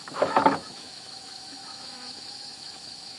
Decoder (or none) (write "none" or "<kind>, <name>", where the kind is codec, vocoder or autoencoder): autoencoder, DAC-VAE